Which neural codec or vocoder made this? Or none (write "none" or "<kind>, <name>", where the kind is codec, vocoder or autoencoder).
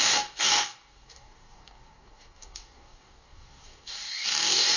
codec, DAC